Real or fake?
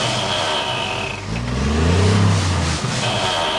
real